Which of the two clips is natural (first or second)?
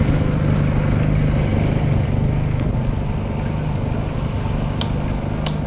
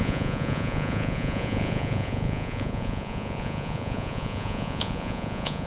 first